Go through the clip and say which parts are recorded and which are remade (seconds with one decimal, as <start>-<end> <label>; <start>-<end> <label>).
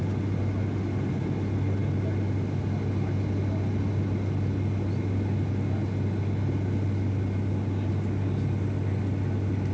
0.0-9.7 recorded